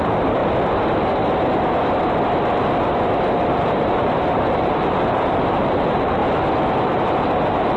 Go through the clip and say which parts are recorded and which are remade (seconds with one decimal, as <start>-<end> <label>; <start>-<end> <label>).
0.0-0.4 remade; 0.4-3.5 recorded; 3.5-6.2 remade; 6.2-6.8 recorded; 6.8-7.8 remade